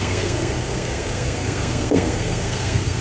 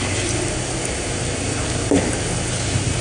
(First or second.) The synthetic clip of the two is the first